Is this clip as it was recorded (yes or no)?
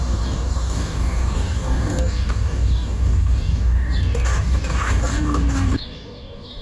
no